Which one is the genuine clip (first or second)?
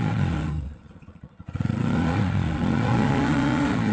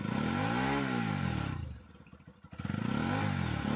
second